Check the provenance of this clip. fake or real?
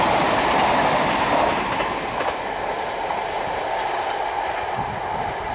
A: real